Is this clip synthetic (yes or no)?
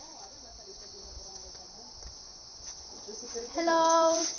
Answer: yes